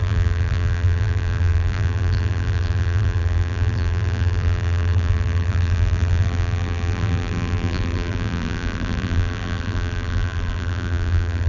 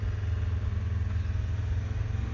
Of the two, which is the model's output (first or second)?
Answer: first